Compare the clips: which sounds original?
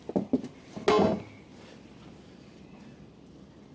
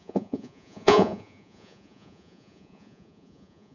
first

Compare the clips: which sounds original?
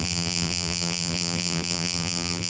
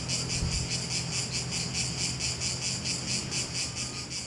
second